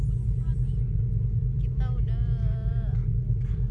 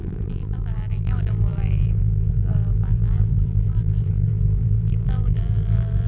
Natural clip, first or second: first